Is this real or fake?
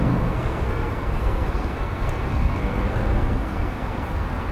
fake